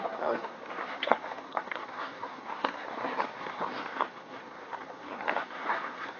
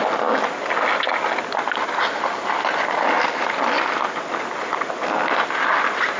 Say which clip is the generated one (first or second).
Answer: first